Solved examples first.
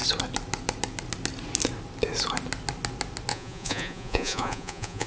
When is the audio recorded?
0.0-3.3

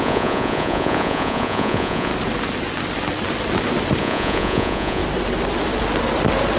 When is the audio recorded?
2.1-4.0; 5.0-6.6

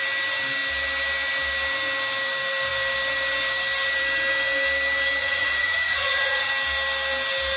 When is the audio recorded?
0.0-5.2; 6.5-7.6